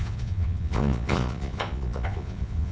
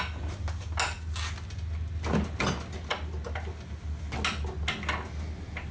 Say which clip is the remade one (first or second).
first